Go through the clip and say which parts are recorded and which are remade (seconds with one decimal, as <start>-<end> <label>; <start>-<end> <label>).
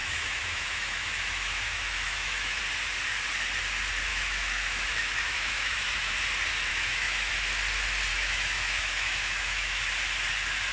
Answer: 0.0-2.6 remade; 2.6-4.1 recorded; 4.1-6.1 remade; 6.1-6.7 recorded; 6.7-7.3 remade; 7.3-8.1 recorded; 8.1-9.8 remade; 9.8-10.7 recorded